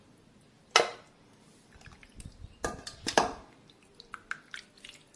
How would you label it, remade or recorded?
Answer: recorded